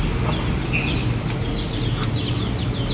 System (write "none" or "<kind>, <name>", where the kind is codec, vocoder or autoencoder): none